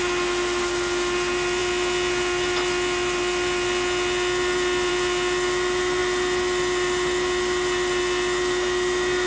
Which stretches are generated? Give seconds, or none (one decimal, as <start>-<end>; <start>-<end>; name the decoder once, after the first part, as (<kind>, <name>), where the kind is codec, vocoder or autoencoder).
none